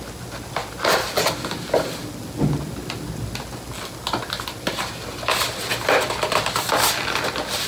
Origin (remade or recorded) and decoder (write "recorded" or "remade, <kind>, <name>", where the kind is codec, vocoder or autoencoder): recorded